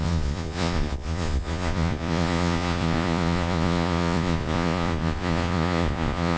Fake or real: fake